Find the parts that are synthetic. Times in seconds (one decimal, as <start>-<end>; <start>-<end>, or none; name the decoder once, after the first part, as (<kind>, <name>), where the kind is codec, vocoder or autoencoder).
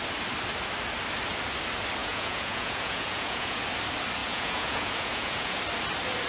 2.0-3.6 (vocoder, Vocos); 4.2-5.6